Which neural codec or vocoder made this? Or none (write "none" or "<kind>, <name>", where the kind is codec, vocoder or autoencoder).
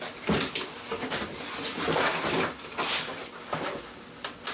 none